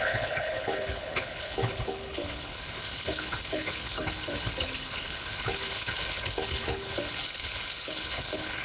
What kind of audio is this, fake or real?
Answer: fake